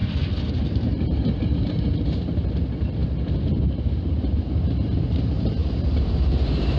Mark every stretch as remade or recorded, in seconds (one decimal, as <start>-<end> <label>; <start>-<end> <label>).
0.0-0.5 recorded; 0.5-3.0 remade; 3.0-3.6 recorded; 3.6-6.8 remade